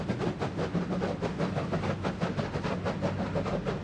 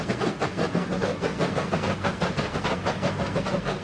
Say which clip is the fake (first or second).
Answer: second